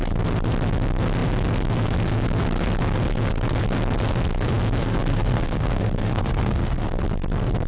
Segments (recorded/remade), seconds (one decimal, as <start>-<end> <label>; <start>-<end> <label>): 0.0-4.8 recorded; 4.8-7.0 remade; 7.0-7.7 recorded